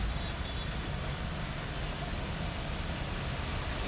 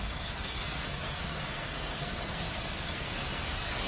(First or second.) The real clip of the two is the first